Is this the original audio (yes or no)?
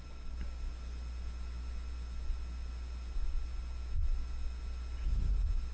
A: yes